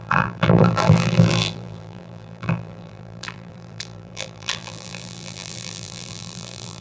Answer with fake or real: fake